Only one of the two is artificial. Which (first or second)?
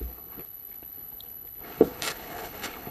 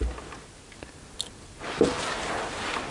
first